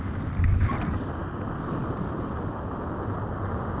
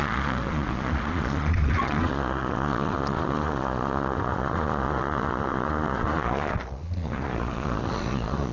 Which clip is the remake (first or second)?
second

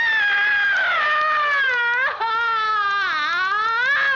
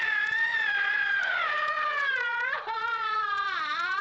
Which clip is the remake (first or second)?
second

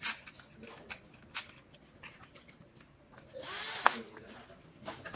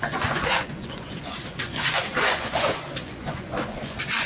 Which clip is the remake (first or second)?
second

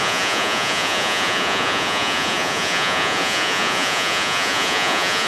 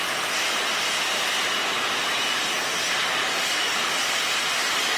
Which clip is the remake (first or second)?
first